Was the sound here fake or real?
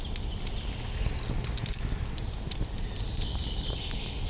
real